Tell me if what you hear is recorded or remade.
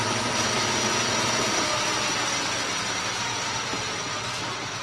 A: recorded